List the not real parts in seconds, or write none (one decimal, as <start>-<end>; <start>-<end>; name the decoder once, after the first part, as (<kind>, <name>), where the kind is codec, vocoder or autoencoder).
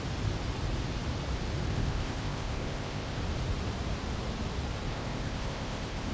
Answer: 1.7-3.2 (codec, ZipCodec); 4.9-6.1